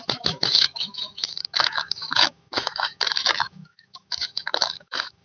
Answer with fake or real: fake